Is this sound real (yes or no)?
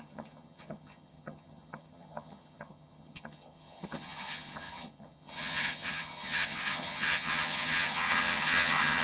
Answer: no